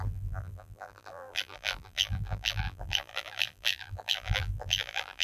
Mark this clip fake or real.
fake